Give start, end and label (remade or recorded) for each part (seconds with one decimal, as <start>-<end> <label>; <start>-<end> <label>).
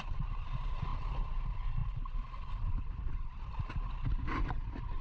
0.0-5.0 recorded